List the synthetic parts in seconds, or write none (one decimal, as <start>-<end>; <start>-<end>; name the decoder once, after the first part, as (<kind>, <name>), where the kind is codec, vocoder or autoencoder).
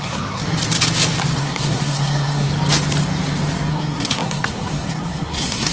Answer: 0.0-0.4 (codec, SNAC); 1.4-2.5; 3.7-5.7